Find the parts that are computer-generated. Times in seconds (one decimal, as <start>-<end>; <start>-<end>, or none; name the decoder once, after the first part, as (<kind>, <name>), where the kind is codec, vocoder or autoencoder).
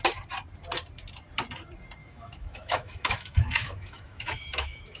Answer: 2.0-5.0 (autoencoder, DAC-VAE)